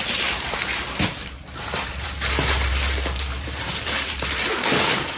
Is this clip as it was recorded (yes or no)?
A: no